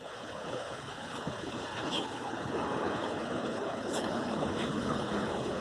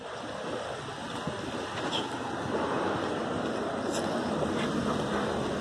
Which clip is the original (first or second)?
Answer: second